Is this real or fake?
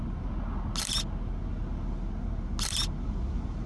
real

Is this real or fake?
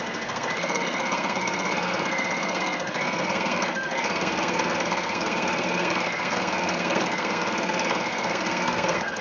fake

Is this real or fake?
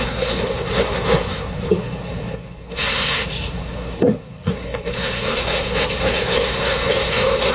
fake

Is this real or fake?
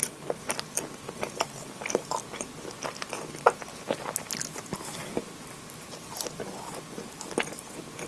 real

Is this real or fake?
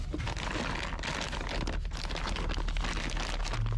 real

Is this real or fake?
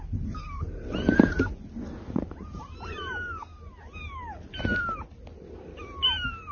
real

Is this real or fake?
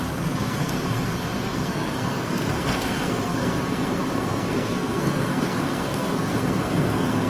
fake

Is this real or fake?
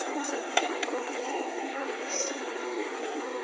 fake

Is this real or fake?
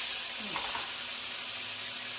real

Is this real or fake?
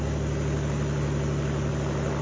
real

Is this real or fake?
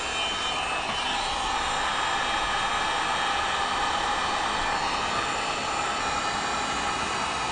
real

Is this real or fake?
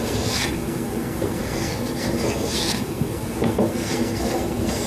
fake